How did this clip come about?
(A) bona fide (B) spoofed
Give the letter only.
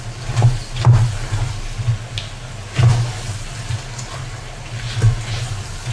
A